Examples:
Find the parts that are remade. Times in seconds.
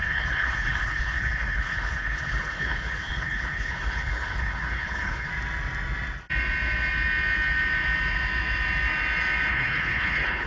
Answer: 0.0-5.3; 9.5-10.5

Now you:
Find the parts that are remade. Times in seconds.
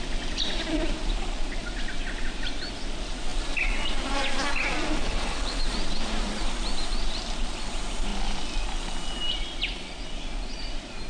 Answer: 5.0-5.6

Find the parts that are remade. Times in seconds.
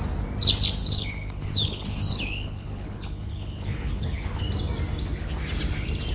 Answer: 0.8-4.4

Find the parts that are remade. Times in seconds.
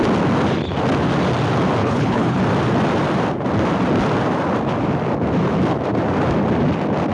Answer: 1.8-2.4